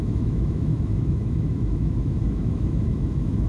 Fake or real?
fake